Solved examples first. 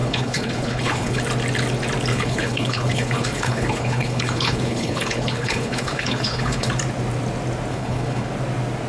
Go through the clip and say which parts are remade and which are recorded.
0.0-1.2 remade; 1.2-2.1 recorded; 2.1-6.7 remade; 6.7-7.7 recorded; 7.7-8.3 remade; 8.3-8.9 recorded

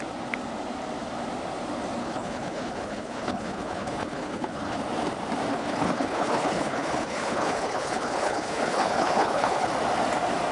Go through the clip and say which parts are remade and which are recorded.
0.0-2.0 recorded; 2.0-4.8 remade; 4.8-5.5 recorded; 5.5-9.7 remade; 9.7-10.5 recorded

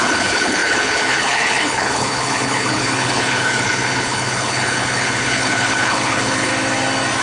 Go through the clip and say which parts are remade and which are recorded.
0.0-6.5 remade; 6.5-7.2 recorded